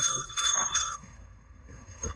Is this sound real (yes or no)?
no